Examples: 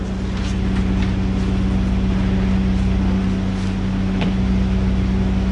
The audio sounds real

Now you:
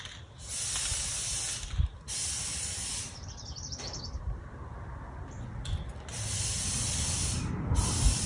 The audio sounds real